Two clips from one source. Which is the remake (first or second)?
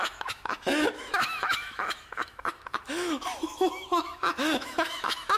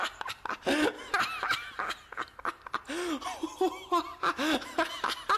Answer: first